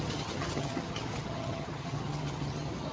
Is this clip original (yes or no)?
no